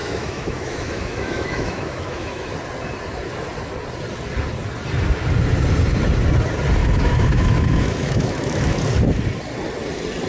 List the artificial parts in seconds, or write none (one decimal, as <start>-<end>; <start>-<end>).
0.0-2.5; 6.8-8.8